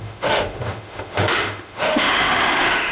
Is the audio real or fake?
fake